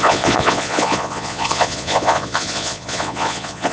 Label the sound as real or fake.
fake